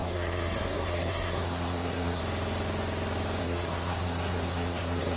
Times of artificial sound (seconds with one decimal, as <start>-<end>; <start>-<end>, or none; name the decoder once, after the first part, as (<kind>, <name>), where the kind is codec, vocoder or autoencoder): 0.0-2.2 (codec, SNAC); 3.4-5.2

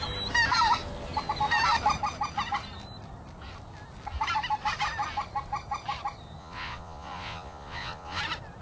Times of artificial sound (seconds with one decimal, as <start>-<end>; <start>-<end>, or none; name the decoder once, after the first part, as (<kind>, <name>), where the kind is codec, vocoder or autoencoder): 6.4-8.2 (vocoder, Vocos)

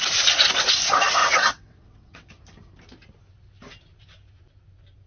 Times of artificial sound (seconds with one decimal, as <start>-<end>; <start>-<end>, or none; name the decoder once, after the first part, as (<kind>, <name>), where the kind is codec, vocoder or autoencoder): 1.2-2.3 (vocoder, WaveNeXt)

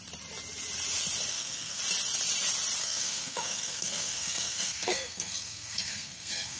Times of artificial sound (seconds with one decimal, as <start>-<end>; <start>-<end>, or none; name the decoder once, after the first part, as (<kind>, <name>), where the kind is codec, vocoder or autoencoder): 1.3-1.8 (codec, SNAC); 2.8-6.6

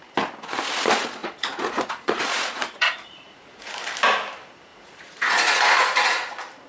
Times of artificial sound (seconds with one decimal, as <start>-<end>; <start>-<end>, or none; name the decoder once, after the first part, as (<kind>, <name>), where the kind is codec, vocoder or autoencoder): 1.2-3.7 (vocoder, Vocos); 4.7-6.3

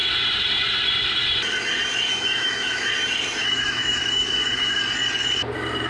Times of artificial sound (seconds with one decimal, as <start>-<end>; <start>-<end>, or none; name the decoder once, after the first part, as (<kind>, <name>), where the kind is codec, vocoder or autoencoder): 2.1-2.9 (autoencoder, DAC-VAE); 3.4-4.8

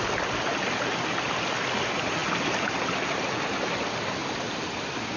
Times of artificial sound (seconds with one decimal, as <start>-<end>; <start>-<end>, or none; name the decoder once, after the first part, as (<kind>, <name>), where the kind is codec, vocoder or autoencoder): 4.2-5.2 (vocoder, BigVGAN v2)

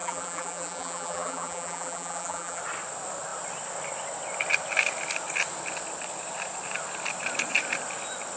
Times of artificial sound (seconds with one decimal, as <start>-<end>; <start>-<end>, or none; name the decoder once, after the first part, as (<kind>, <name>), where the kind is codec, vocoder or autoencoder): 0.0-2.6 (vocoder, BigVGAN v2)